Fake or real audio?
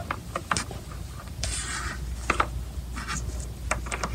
real